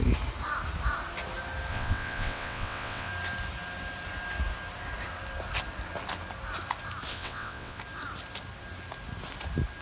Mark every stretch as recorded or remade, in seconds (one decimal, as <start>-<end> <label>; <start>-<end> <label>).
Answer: 0.0-1.7 recorded; 1.7-3.1 remade; 3.1-7.1 recorded; 7.1-7.8 remade; 7.8-9.8 recorded